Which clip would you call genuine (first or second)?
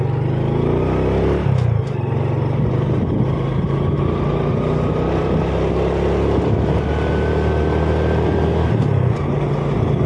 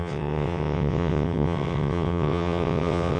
first